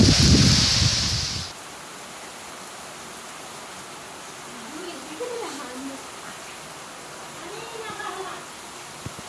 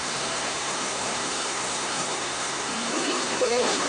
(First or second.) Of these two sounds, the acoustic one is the first